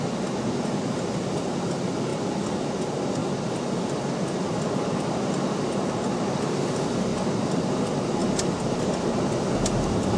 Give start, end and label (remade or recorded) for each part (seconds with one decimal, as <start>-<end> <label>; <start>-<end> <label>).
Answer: 0.0-10.2 recorded